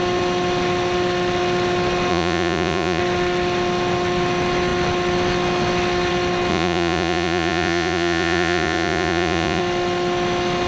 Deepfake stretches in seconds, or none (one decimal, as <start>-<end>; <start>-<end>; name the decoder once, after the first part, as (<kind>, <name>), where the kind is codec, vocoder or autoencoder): 2.1-3.0 (vocoder, Vocos); 6.5-9.6